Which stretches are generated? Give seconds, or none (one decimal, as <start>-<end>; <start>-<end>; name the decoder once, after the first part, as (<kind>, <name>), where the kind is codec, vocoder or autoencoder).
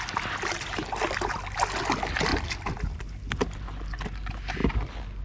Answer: none